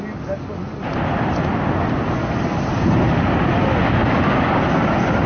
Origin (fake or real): real